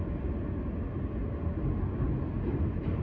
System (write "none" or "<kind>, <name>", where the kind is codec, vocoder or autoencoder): none